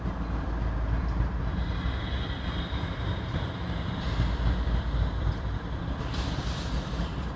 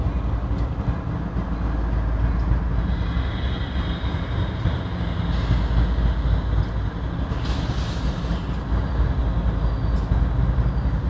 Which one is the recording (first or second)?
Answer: second